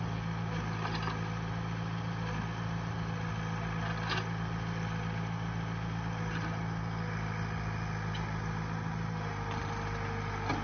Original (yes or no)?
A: yes